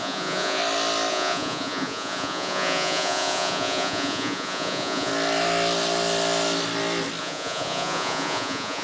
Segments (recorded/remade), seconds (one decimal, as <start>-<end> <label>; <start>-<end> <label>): 0.0-0.6 remade; 0.6-1.1 recorded; 1.1-5.1 remade; 5.1-7.2 recorded; 7.2-8.8 remade